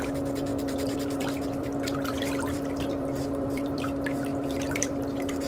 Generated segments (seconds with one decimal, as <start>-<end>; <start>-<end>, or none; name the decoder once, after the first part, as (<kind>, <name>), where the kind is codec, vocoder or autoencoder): 0.5-3.8 (vocoder, BigVGAN v2); 4.3-4.9

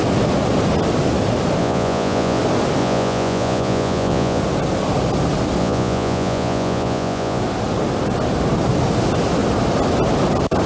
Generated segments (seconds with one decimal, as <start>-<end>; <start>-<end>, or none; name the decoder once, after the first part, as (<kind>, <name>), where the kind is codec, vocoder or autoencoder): 1.6-2.4 (vocoder, Vocos); 2.8-4.4; 5.6-7.4